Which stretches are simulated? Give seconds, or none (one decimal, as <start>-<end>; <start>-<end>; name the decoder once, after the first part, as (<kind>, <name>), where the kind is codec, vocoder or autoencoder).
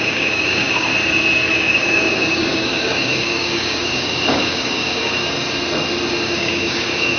0.0-0.9 (codec, DAC); 1.5-5.2; 6.2-7.2